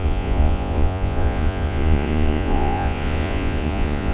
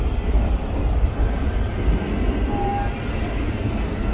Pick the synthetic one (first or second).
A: first